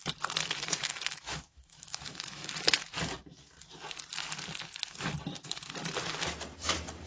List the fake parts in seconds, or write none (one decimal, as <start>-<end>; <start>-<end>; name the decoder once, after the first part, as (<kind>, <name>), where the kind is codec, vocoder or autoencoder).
0.8-2.6 (autoencoder, DAC-VAE); 5.3-5.8